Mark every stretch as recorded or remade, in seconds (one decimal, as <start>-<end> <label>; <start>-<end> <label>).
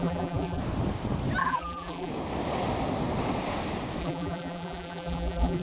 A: 0.0-0.6 remade; 0.6-1.4 recorded; 1.4-2.1 remade; 2.1-4.0 recorded; 4.0-5.6 remade